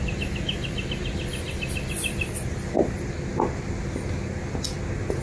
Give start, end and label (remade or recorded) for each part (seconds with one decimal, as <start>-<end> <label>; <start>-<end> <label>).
0.0-5.2 recorded

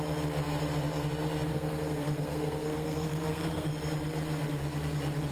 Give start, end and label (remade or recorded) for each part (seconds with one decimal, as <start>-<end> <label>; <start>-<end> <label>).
0.0-1.5 recorded; 1.5-3.7 remade; 3.7-5.3 recorded

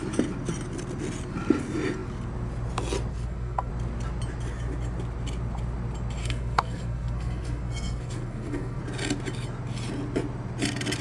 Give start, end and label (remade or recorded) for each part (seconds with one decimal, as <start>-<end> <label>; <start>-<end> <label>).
0.0-3.1 recorded; 3.1-3.7 remade; 3.7-6.2 recorded; 6.2-8.8 remade; 8.8-11.0 recorded